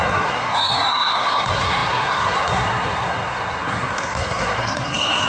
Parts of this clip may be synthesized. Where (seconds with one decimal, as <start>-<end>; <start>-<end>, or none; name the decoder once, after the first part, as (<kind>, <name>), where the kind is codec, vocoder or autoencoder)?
0.0-5.3 (codec, SNAC)

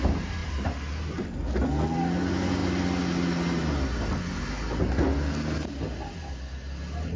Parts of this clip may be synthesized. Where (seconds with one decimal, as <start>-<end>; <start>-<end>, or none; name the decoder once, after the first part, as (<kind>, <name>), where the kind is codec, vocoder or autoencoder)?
0.4-1.7 (vocoder, BigVGAN v2)

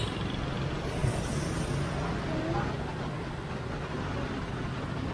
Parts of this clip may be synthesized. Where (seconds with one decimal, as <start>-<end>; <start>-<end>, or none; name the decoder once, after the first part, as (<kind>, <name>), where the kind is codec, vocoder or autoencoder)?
none

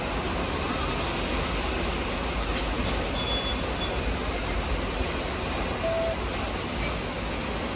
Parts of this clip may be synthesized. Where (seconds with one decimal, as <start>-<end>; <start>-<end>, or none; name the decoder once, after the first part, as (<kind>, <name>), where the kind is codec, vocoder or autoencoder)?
4.2-5.0 (vocoder, BigVGAN v2)

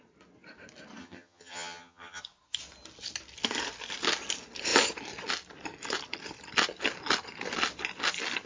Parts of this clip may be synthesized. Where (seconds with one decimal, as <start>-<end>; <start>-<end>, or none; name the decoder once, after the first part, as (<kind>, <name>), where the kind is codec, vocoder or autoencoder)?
1.0-2.2 (vocoder, HiFi-GAN)

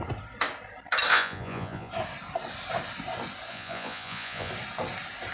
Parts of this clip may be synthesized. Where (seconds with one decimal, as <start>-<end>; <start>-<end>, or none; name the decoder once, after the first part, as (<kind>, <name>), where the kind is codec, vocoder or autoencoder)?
1.1-1.9 (vocoder, Vocos); 3.5-4.5

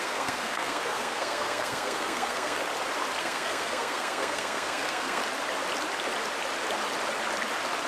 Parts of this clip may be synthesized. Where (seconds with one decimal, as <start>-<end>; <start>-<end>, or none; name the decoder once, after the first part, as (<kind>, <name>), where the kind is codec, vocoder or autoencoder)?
0.0-2.6 (codec, SNAC); 3.2-5.2